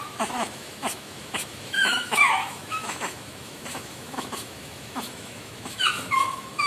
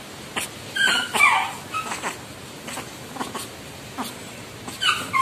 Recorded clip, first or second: second